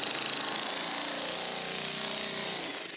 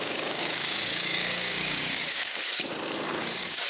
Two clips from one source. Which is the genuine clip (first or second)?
first